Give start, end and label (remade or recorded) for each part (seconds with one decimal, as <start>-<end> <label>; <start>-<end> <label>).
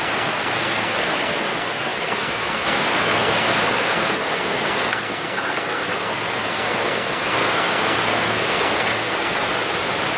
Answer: 0.0-9.5 remade; 9.5-10.2 recorded